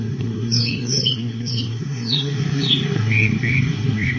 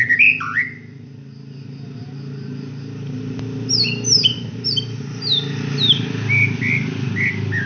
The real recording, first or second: second